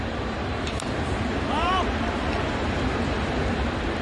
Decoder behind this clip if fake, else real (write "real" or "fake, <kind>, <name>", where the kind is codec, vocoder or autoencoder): fake, vocoder, BigVGAN v2